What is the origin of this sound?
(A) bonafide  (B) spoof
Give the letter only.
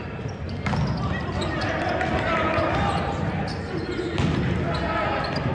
A